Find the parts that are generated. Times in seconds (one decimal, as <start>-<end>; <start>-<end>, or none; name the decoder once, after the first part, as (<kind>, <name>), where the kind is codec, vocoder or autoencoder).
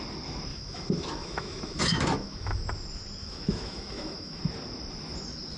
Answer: 0.5-2.6 (autoencoder, DAC-VAE); 3.2-4.4